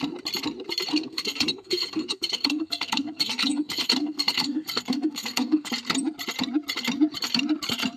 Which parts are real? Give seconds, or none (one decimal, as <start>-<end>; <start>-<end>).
0.0-0.9; 5.7-8.0